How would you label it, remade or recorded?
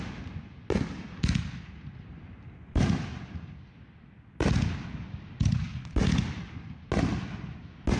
recorded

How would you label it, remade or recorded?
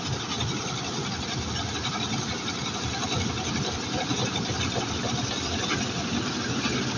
recorded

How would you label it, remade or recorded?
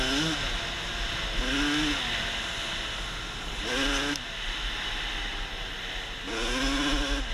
recorded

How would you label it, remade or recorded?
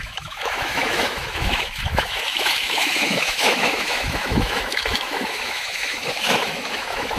remade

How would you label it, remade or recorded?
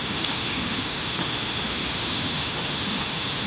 remade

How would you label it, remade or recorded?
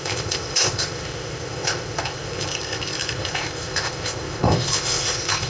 remade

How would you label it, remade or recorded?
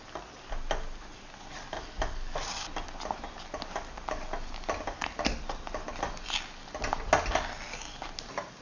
recorded